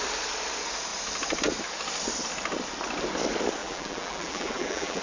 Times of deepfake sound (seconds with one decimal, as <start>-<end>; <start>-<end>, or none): 3.6-5.0